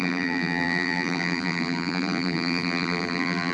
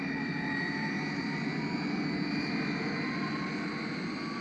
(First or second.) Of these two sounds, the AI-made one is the first